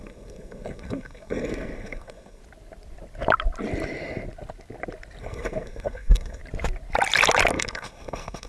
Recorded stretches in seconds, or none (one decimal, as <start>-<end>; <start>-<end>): 2.4-5.2; 6.4-7.5